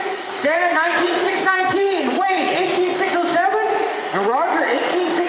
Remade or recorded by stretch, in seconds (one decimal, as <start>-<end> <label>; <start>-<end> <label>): 0.0-2.9 remade; 2.9-3.7 recorded; 3.7-5.3 remade